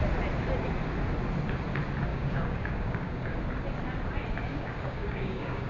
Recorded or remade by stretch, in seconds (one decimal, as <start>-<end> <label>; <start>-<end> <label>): 0.0-2.1 recorded; 2.1-3.4 remade; 3.4-4.5 recorded; 4.5-5.7 remade